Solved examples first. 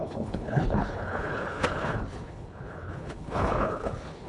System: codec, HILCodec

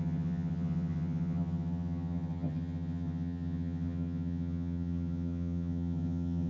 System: vocoder, HiFi-GAN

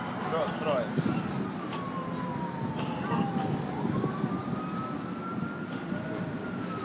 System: none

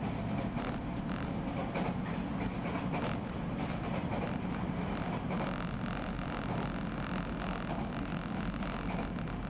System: none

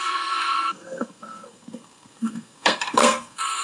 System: codec, SNAC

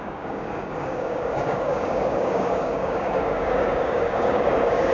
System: codec, DAC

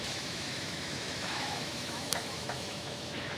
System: autoencoder, DAC-VAE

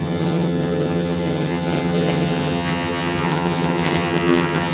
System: vocoder, HiFi-GAN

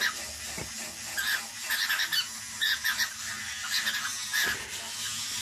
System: none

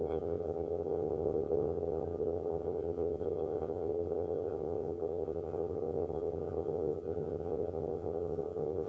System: vocoder, HiFi-GAN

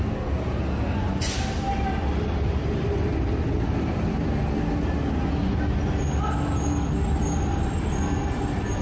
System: none